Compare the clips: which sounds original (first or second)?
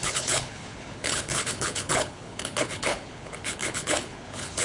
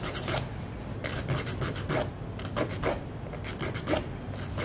second